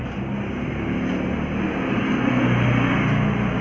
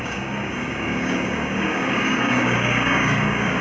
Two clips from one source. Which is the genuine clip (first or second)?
first